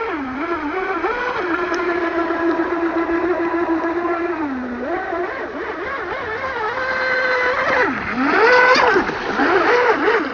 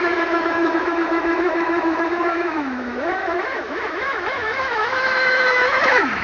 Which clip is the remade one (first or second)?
second